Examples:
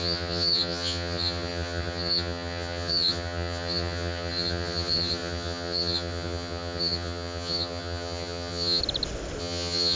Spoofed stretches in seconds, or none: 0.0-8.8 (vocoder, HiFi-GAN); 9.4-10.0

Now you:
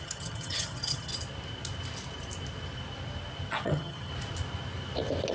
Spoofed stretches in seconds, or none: 0.0-1.1 (vocoder, HiFi-GAN); 3.5-4.1

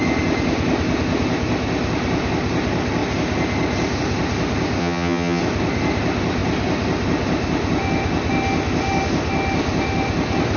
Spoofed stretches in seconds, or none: 4.8-5.4 (vocoder, HiFi-GAN)

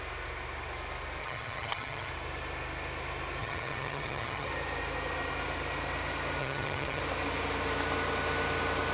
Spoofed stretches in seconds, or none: 1.2-2.1 (vocoder, HiFi-GAN); 3.4-4.5; 6.4-7.0